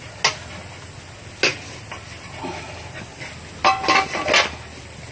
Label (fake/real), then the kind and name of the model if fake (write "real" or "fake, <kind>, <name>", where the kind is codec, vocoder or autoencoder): real